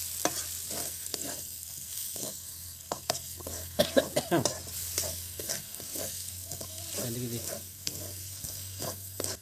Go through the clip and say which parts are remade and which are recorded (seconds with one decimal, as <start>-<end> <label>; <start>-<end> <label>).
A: 0.0-0.8 recorded; 0.8-4.0 remade; 4.0-5.1 recorded; 5.1-6.8 remade; 6.8-7.4 recorded; 7.4-9.4 remade